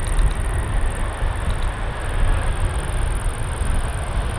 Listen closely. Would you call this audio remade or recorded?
recorded